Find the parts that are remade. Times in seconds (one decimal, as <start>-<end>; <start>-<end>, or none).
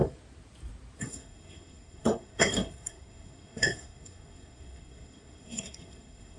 1.0-6.4